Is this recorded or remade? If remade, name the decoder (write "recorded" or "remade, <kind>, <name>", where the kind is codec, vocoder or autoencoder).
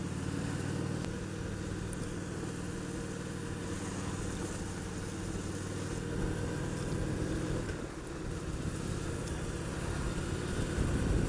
recorded